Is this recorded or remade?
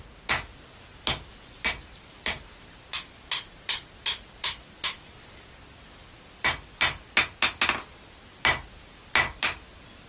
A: recorded